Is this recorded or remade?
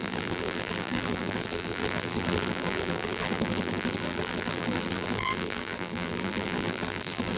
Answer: remade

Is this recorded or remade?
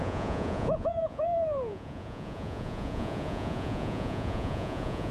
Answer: remade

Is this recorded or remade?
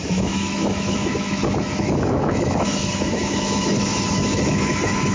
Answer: remade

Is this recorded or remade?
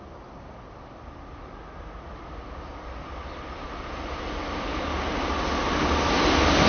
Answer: recorded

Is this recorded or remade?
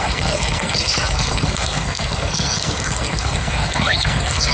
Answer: remade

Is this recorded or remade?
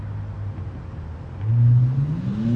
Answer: recorded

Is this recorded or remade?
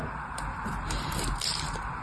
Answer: recorded